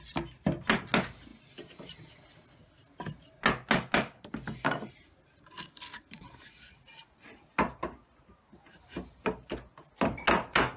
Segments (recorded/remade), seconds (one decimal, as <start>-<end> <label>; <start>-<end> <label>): 0.0-10.8 recorded